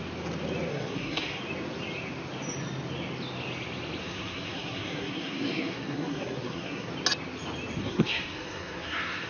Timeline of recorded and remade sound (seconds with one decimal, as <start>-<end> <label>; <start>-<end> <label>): 0.0-0.7 recorded; 0.7-1.4 remade; 1.4-4.0 recorded; 4.0-6.9 remade; 6.9-7.8 recorded; 7.8-9.3 remade